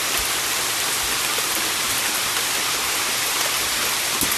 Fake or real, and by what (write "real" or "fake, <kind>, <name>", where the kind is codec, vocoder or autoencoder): real